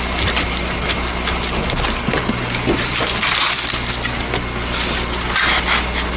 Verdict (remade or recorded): recorded